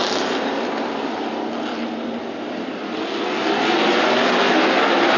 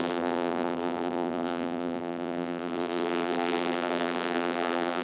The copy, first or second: second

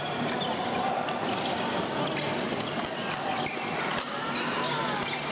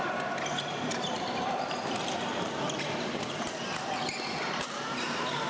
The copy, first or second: second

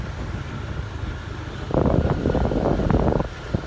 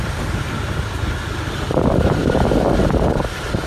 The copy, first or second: second